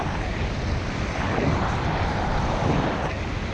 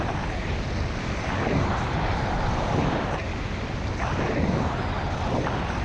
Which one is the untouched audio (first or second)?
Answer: second